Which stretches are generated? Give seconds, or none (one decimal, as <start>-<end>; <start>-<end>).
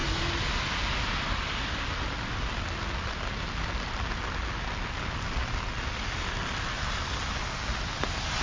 none